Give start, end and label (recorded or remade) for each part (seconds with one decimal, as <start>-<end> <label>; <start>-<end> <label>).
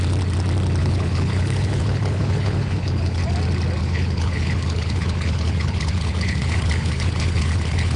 0.0-0.8 recorded; 0.8-3.2 remade; 3.2-3.8 recorded; 3.8-8.0 remade